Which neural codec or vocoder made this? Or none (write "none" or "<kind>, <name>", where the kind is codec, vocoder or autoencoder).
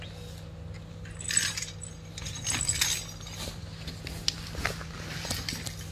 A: none